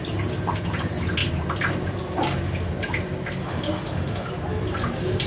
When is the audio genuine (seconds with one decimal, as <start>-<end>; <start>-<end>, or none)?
0.0-3.4; 4.3-5.3